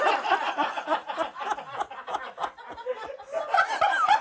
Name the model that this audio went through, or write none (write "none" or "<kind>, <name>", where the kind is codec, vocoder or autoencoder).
none